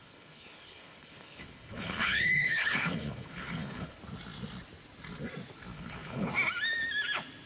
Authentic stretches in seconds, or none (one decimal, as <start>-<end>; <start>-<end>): 4.0-5.7; 6.3-7.5